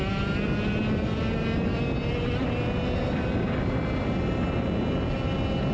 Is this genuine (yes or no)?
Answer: yes